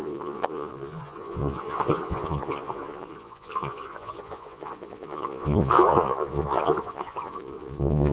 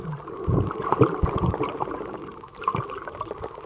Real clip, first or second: second